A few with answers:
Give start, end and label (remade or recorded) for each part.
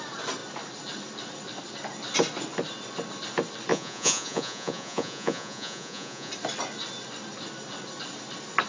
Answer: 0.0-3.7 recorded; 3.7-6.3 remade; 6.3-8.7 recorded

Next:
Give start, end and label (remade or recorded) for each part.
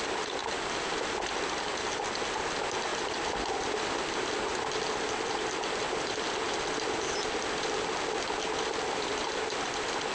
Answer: 0.0-10.1 recorded